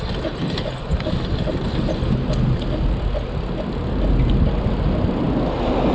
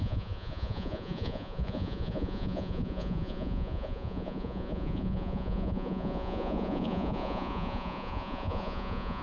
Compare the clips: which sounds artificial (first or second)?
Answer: second